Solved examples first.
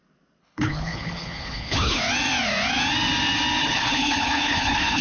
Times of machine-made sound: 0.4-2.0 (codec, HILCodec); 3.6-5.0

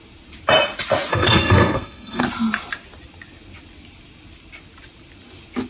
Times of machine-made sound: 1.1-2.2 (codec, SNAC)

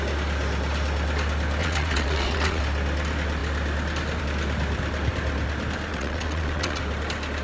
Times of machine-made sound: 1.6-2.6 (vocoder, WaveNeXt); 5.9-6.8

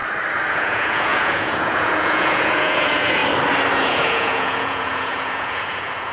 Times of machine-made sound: 0.5-3.2 (vocoder, Vocos); 3.7-6.1

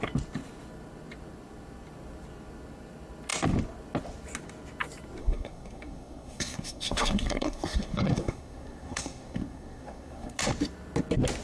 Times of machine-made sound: 5.2-10.4 (codec, SNAC)

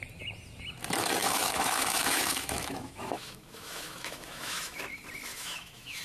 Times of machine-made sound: 1.2-4.8 (autoencoder, DAC-VAE); 5.3-6.0